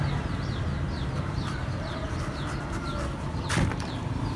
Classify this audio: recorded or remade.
remade